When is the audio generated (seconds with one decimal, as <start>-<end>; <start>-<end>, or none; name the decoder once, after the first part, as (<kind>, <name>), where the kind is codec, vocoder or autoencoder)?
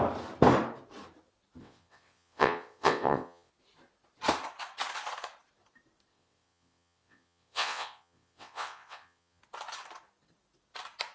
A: 1.6-3.5 (vocoder, WaveNeXt); 6.1-9.4